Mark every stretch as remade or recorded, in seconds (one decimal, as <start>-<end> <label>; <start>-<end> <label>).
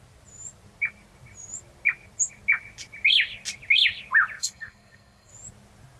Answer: 0.0-4.4 recorded; 4.4-5.3 remade; 5.3-6.0 recorded